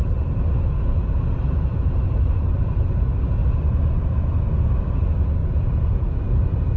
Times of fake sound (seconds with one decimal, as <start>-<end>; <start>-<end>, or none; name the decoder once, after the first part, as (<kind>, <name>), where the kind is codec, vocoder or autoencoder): 0.0-3.4 (vocoder, BigVGAN v2); 4.6-6.8